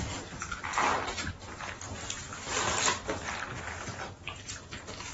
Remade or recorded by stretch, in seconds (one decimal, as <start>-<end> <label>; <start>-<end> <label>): 0.0-0.7 recorded; 0.7-1.3 remade; 1.3-2.0 recorded; 2.0-3.4 remade; 3.4-5.1 recorded